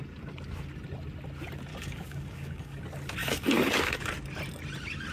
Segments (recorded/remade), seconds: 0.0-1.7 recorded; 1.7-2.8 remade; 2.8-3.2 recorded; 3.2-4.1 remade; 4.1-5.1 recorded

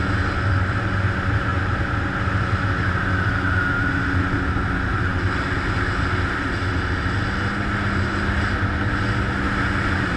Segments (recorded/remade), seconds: 0.0-5.1 recorded; 5.1-6.1 remade; 6.1-10.2 recorded

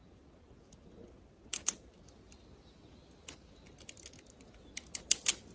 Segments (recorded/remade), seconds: 0.0-5.5 recorded